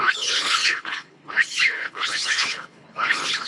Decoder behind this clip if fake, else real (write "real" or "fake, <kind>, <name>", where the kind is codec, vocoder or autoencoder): fake, codec, HILCodec